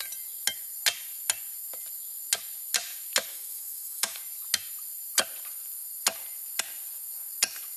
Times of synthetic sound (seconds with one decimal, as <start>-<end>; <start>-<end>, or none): 3.3-4.2

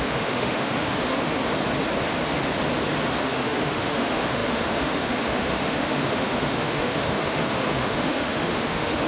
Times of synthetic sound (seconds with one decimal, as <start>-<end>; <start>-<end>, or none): 0.0-1.4; 3.2-9.1

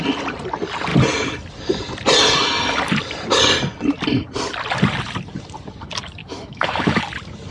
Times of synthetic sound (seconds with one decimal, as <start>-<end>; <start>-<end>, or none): 6.2-7.0

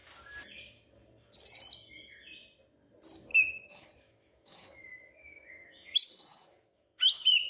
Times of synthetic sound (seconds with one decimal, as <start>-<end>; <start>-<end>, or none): 3.3-7.5

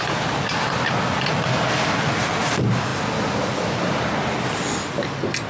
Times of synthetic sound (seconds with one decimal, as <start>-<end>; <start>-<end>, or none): none